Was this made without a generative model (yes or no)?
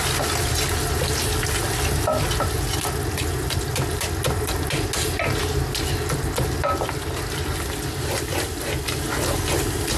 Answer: yes